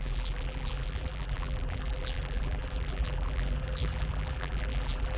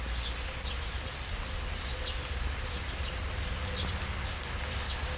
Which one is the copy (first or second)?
first